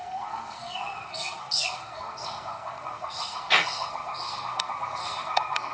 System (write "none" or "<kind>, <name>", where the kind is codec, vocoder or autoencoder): codec, SNAC